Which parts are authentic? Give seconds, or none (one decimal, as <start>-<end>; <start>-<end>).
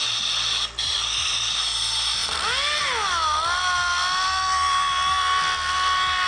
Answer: 0.0-6.3